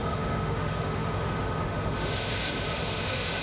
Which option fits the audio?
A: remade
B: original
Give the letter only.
A